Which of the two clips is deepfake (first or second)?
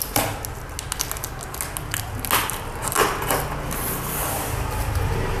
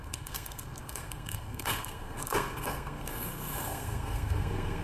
second